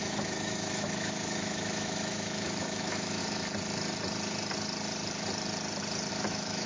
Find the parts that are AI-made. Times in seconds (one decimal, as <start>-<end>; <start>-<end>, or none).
0.0-3.2; 6.1-6.7